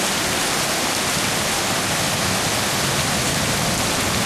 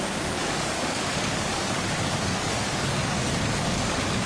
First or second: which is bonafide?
first